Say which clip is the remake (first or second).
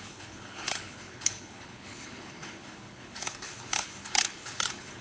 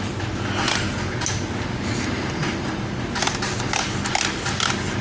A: first